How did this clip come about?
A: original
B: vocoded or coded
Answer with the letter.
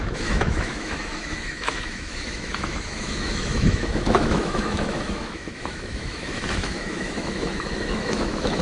B